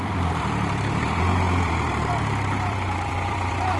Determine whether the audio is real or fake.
fake